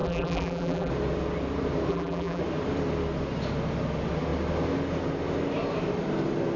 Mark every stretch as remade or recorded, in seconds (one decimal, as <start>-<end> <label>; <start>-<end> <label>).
0.0-0.9 remade; 0.9-1.9 recorded; 1.9-2.4 remade; 2.4-6.6 recorded